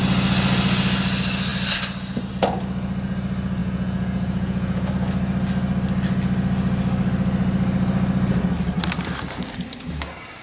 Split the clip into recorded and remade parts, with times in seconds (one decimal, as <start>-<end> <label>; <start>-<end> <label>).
0.0-3.6 recorded; 3.6-4.9 remade; 4.9-10.4 recorded